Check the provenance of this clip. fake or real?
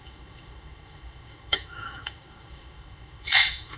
fake